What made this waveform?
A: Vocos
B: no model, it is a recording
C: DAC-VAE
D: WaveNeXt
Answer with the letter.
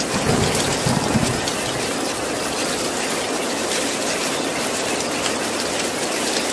B